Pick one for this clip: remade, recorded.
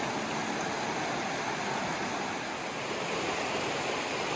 recorded